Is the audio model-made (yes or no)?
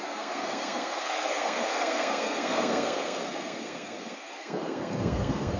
yes